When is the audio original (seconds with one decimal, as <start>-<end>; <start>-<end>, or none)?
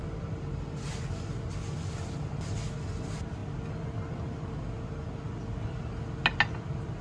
0.0-7.0